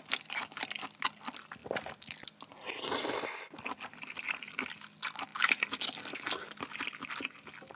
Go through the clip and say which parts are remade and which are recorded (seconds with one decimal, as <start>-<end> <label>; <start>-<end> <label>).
0.0-7.8 recorded